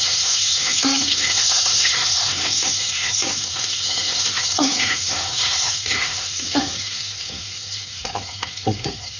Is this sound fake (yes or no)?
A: yes